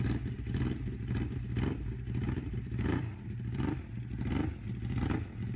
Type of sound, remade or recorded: recorded